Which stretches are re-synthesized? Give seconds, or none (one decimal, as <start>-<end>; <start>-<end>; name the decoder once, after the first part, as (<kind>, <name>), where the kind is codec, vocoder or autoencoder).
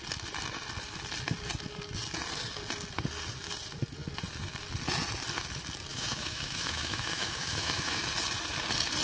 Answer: 5.9-8.0 (autoencoder, DAC-VAE)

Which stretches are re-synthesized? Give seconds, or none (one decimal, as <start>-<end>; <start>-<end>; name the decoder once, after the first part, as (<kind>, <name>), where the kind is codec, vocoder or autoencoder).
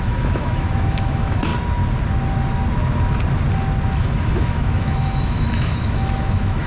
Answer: 0.0-1.5 (autoencoder, DAC-VAE); 4.0-6.7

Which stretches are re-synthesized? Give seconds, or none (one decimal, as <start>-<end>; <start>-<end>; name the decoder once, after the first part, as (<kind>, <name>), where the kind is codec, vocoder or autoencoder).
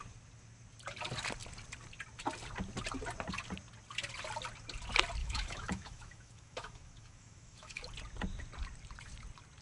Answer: 5.2-7.8 (autoencoder, DAC-VAE)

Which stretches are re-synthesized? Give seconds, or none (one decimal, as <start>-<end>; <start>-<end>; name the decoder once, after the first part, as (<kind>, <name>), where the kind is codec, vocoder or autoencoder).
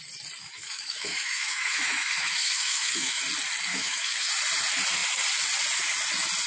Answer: 0.4-3.2 (autoencoder, DAC-VAE); 3.7-4.3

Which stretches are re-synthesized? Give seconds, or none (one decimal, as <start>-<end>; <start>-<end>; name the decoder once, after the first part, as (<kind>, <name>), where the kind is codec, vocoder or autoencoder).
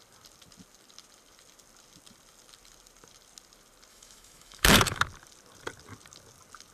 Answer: 3.9-5.0 (autoencoder, DAC-VAE)